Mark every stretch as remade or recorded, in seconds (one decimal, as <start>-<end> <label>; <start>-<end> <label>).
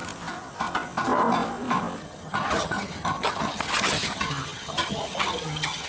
0.0-2.0 recorded; 2.0-5.9 remade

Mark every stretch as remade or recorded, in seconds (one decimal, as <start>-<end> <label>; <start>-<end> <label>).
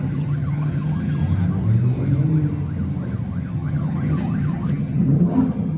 0.0-1.2 remade; 1.2-3.5 recorded; 3.5-5.8 remade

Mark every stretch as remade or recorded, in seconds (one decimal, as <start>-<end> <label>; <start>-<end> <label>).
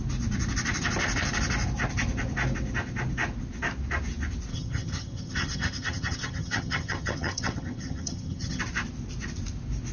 0.0-4.5 recorded; 4.5-8.6 remade; 8.6-9.9 recorded